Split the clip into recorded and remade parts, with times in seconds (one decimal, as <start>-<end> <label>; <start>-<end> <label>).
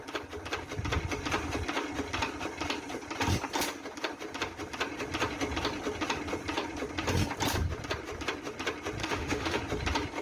0.0-9.0 recorded; 9.0-9.6 remade; 9.6-10.2 recorded